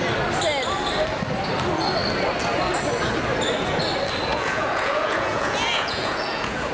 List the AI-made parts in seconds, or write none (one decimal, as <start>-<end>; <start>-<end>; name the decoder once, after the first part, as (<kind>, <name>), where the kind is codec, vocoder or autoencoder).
4.3-6.7 (vocoder, Vocos)